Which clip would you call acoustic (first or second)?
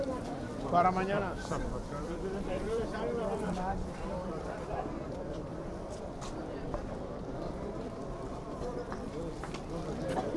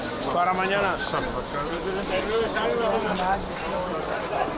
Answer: second